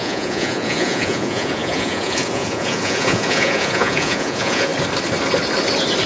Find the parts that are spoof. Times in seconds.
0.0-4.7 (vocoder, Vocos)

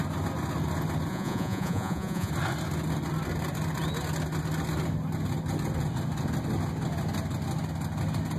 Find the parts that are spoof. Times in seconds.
1.1-2.3 (vocoder, Vocos)

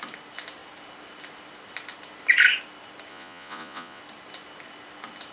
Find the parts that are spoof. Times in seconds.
3.1-4.0 (vocoder, Vocos)

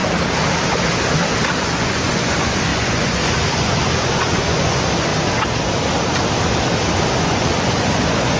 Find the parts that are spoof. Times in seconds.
1.6-5.1 (vocoder, Vocos); 7.2-8.4

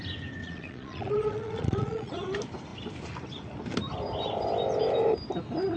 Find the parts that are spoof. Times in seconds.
0.4-2.1 (vocoder, Vocos)